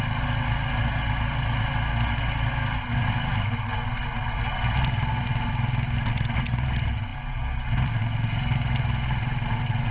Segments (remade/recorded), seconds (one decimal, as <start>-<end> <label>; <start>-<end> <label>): 0.0-9.9 recorded